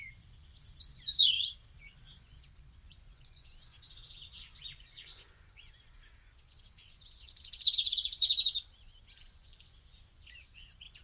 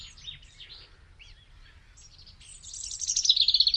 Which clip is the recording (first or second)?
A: second